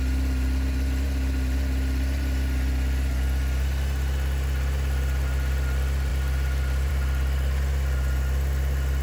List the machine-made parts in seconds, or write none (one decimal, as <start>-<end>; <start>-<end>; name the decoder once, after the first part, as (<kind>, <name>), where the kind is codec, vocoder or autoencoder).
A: none